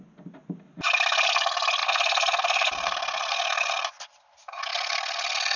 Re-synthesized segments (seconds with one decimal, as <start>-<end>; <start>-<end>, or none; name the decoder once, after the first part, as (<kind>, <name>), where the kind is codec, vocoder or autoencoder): none